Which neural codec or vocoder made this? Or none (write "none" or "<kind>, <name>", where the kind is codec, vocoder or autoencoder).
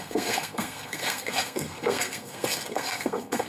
codec, SNAC